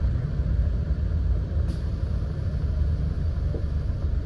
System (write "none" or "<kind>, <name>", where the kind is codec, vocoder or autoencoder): none